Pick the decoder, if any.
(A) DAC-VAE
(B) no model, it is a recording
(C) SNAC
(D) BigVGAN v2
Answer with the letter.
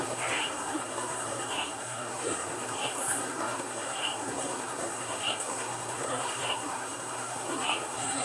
C